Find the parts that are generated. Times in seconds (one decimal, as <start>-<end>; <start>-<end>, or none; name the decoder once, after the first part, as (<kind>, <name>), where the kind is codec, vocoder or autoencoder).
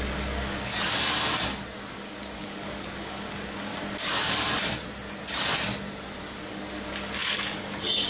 0.0-0.7 (codec, DAC); 1.9-3.7; 6.2-8.1